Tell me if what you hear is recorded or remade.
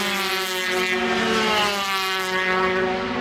recorded